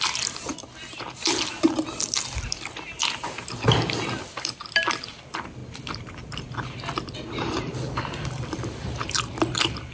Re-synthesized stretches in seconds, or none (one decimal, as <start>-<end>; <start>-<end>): 0.0-0.5; 5.1-5.6; 7.6-9.9